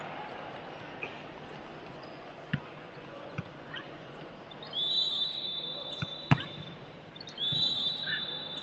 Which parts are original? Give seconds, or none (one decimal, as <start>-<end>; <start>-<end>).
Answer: 0.0-1.7; 4.3-8.6